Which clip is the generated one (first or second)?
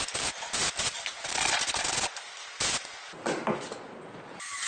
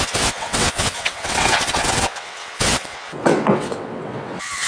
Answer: second